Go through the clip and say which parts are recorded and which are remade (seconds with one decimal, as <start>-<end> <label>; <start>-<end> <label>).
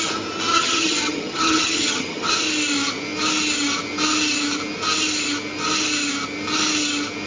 0.0-0.5 recorded; 0.5-2.3 remade; 2.3-7.3 recorded